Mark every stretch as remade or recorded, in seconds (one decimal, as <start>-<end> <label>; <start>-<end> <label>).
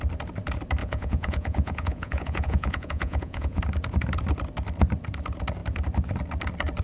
0.0-0.8 recorded; 0.8-3.6 remade; 3.6-6.8 recorded